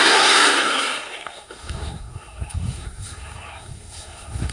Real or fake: fake